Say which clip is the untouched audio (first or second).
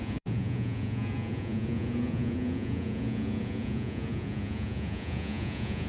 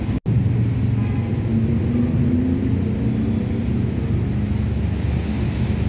second